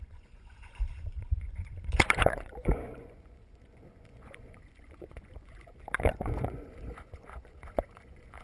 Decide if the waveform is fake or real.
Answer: fake